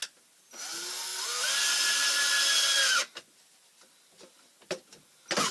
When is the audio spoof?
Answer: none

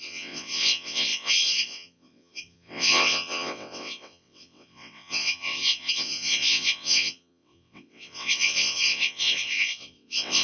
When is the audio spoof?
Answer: 0.0-10.4 (vocoder, WaveNeXt)

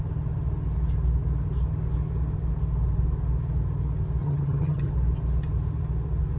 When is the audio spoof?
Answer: 4.2-4.9 (vocoder, HiFi-GAN)

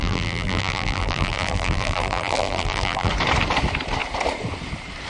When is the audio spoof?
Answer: 0.0-3.1 (vocoder, BigVGAN v2)

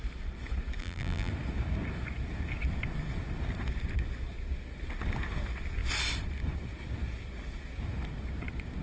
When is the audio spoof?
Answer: 0.8-1.3 (vocoder, BigVGAN v2)

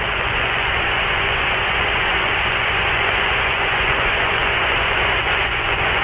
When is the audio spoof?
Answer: 0.0-6.0 (vocoder, Vocos)

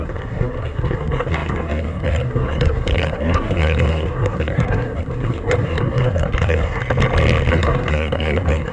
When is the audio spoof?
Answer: 0.0-6.8 (codec, SNAC); 7.5-8.7